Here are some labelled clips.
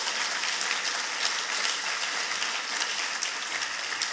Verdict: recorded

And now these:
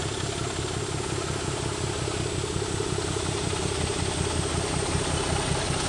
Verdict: recorded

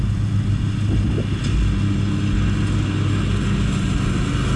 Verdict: recorded